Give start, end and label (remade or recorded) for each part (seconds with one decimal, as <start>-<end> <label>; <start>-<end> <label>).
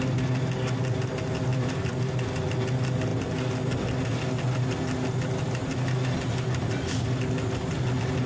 0.0-1.5 recorded; 1.5-2.5 remade; 2.5-8.3 recorded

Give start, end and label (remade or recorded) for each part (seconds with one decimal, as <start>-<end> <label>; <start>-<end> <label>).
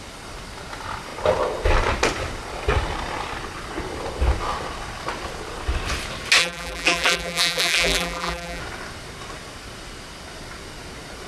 0.0-6.4 recorded; 6.4-8.6 remade; 8.6-11.3 recorded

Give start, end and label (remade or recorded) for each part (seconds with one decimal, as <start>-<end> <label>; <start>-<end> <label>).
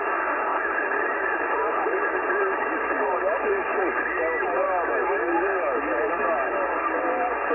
0.0-0.5 recorded; 0.5-4.5 remade; 4.5-7.5 recorded